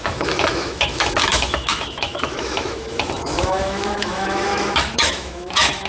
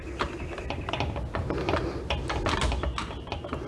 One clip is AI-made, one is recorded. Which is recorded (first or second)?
second